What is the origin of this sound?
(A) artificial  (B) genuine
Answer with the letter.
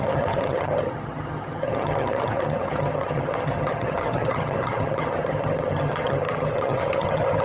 A